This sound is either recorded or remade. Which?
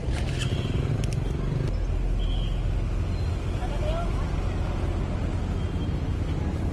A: recorded